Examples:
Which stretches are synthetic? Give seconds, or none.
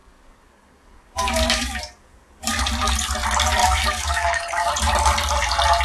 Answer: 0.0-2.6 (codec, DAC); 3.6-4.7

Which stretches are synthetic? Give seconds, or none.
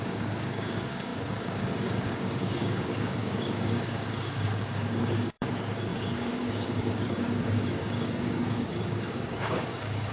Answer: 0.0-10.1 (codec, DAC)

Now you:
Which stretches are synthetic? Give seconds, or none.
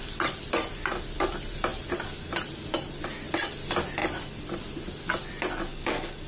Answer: 5.7-6.3 (codec, DAC)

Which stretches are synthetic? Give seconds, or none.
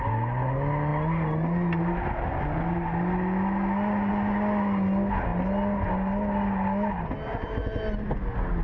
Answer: none